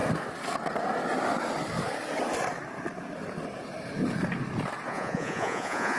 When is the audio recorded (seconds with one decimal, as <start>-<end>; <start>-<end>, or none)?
0.0-4.9